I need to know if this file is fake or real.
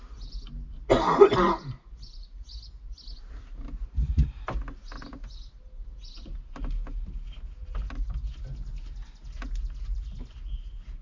real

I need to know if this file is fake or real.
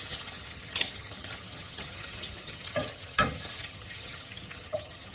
fake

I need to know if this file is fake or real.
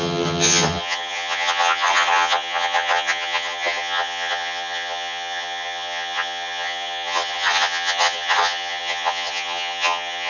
fake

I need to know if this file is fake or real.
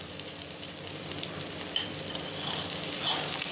real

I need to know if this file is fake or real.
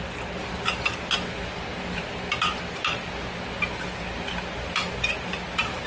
real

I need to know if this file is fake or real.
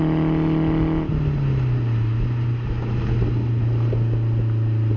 real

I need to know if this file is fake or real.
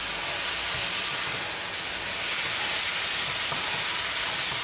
real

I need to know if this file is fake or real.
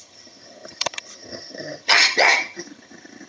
fake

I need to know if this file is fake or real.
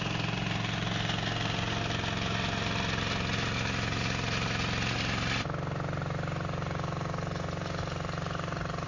real